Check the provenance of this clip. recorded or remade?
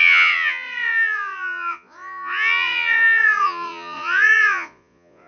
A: remade